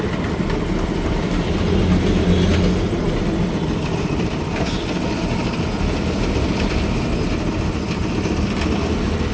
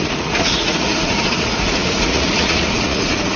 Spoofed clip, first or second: second